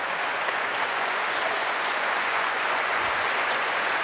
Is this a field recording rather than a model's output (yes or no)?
no